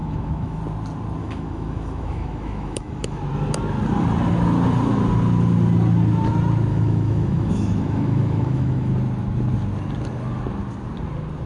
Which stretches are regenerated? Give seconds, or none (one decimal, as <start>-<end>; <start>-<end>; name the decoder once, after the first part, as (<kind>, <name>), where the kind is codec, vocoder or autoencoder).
0.0-0.6 (autoencoder, DAC-VAE); 1.2-3.2; 6.7-8.9